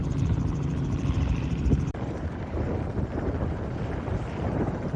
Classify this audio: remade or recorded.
remade